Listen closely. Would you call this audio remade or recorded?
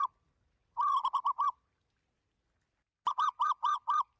recorded